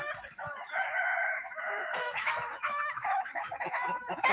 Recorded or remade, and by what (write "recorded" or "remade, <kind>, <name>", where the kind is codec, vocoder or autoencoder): remade, autoencoder, DAC-VAE